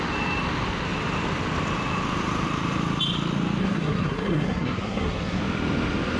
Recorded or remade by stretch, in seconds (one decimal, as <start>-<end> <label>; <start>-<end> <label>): 0.0-3.6 recorded; 3.6-5.4 remade; 5.4-6.2 recorded